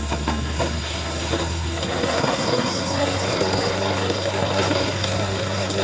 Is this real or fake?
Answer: fake